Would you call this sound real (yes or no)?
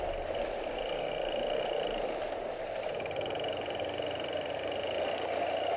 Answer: yes